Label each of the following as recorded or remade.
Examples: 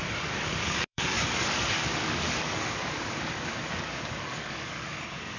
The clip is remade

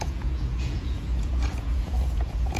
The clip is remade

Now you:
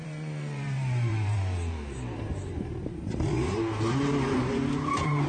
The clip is remade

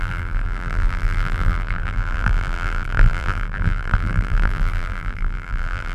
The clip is remade